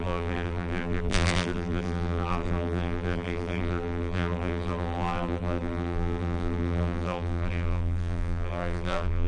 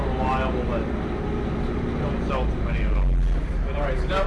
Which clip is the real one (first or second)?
second